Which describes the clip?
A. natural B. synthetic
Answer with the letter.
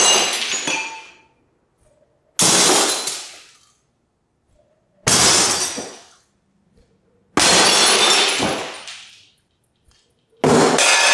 A